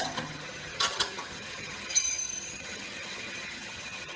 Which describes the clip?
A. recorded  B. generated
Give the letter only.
B